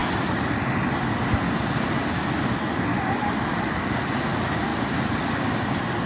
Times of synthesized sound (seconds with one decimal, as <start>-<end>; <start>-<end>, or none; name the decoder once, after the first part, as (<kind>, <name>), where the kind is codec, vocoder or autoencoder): none